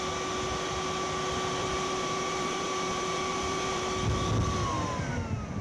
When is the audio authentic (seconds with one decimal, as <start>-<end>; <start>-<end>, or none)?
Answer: 0.0-1.6; 3.8-5.6